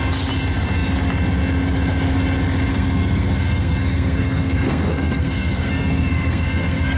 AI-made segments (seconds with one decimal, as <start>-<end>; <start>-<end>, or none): 2.7-7.0